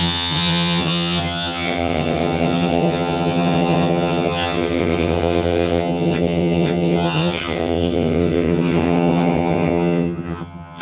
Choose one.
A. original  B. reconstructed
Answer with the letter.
B